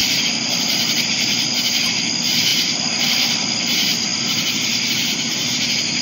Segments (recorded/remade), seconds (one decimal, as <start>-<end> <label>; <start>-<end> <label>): 0.0-0.7 remade; 0.7-2.5 recorded; 2.5-3.6 remade; 3.6-6.0 recorded